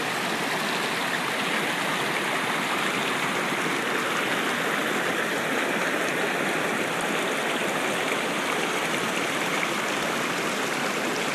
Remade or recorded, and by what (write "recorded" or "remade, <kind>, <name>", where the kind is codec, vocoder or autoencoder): recorded